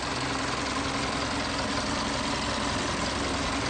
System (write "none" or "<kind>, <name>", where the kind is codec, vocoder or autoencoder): none